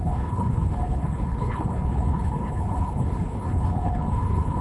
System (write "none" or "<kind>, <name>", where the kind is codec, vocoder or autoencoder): codec, HILCodec